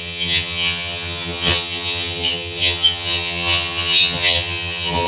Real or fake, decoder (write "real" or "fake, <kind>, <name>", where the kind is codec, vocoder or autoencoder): fake, vocoder, HiFi-GAN